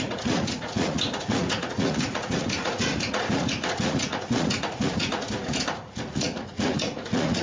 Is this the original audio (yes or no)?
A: no